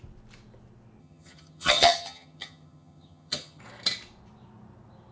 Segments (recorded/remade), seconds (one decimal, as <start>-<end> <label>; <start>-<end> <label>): 0.0-1.0 recorded; 1.0-3.6 remade; 3.6-5.1 recorded